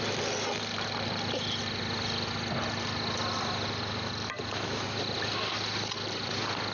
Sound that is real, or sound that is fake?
real